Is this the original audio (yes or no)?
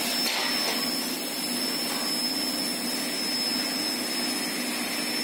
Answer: yes